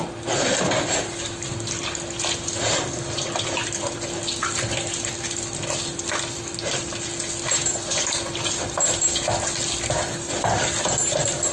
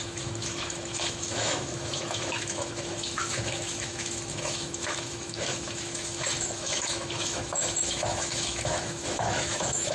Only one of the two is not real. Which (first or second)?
second